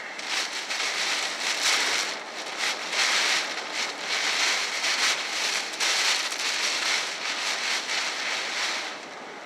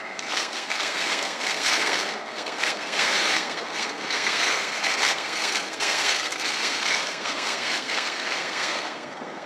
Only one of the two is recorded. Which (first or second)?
first